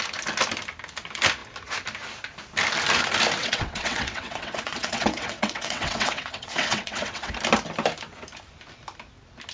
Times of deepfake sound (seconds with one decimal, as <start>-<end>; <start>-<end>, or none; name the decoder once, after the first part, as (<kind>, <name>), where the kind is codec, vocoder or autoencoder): 3.4-7.3 (vocoder, WaveNeXt)